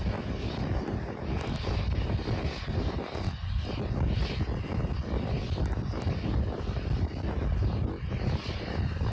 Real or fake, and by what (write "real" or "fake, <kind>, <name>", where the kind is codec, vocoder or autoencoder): real